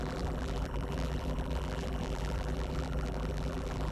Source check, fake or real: fake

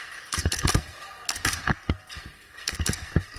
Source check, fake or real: fake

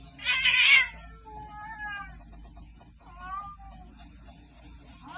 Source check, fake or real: real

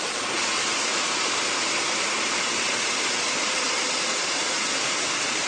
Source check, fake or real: fake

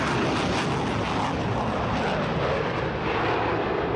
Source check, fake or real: real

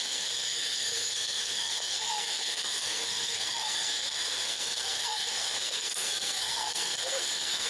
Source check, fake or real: fake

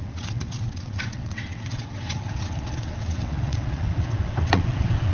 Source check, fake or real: fake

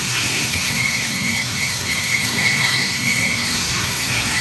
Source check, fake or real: fake